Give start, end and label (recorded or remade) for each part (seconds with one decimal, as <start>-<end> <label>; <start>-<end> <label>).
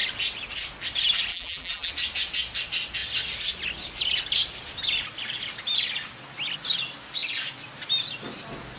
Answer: 0.0-1.3 recorded; 1.3-1.9 remade; 1.9-8.8 recorded